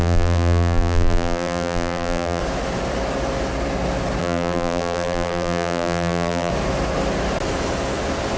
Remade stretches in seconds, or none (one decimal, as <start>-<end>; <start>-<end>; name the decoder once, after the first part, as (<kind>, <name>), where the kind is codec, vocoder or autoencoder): 0.0-2.4 (vocoder, BigVGAN v2); 4.2-6.5